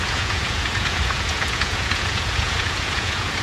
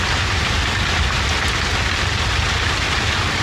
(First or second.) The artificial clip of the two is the first